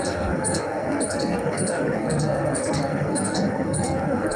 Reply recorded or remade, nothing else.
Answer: remade